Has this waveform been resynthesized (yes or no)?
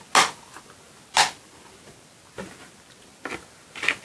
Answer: no